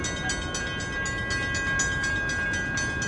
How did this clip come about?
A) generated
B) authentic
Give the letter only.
B